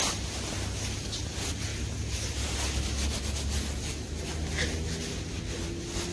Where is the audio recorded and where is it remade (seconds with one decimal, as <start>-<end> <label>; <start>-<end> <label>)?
0.0-6.1 recorded